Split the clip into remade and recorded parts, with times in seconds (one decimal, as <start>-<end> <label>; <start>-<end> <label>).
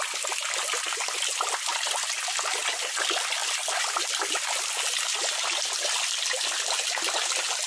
0.0-7.7 recorded